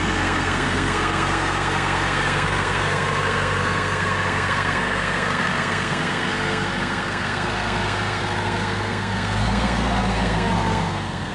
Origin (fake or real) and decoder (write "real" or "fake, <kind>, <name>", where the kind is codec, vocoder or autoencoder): fake, codec, SNAC